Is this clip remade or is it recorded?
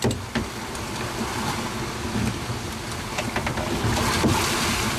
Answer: recorded